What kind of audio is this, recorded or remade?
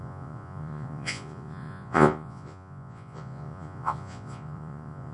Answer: remade